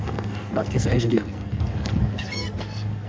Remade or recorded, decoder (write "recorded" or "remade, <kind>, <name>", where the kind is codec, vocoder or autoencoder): remade, codec, SNAC